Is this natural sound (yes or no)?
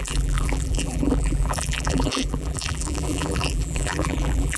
no